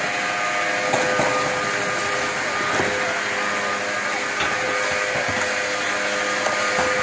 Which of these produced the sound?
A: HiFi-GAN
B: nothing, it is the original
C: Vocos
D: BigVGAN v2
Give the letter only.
B